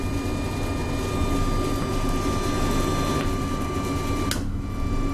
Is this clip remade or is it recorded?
recorded